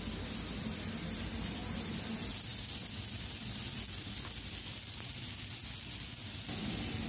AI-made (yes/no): no